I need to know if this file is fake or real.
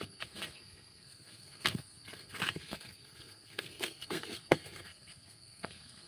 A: fake